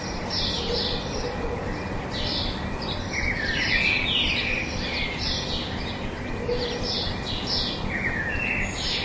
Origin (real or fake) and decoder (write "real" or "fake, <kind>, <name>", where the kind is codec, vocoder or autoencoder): real